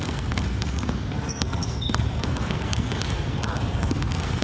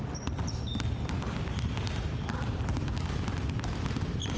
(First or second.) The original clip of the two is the second